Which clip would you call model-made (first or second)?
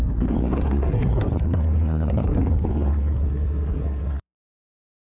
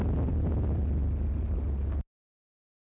first